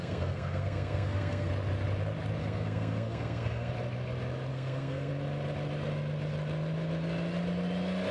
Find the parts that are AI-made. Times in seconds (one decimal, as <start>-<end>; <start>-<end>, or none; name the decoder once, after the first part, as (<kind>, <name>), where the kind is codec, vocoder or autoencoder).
0.0-1.5 (codec, SNAC); 2.4-3.7; 4.5-5.1